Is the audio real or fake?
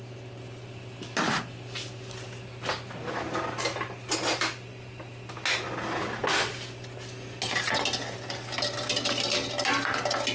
real